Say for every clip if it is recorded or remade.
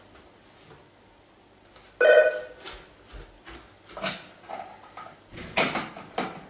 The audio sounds recorded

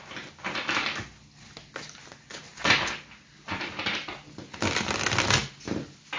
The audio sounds recorded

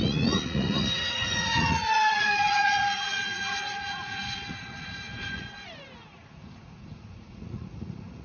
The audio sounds remade